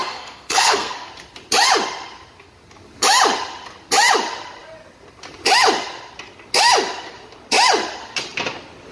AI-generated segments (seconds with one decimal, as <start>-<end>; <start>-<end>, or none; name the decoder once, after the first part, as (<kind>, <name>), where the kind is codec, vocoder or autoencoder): 0.0-1.1 (codec, SNAC)